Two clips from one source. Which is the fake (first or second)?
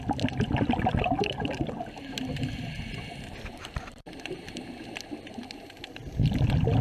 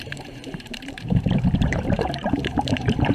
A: second